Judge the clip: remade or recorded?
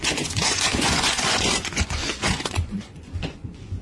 remade